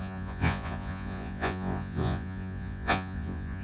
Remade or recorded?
remade